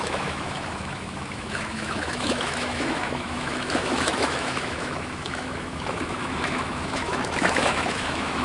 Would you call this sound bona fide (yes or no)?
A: no